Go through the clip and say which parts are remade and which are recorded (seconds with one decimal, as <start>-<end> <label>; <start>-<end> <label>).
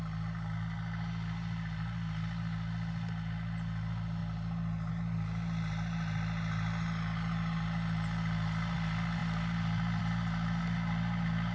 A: 0.0-11.5 recorded